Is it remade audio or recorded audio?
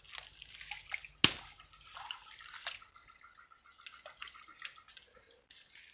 recorded